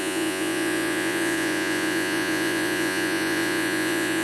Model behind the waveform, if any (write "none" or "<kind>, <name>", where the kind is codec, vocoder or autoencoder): vocoder, Vocos